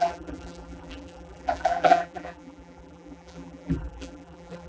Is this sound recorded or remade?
remade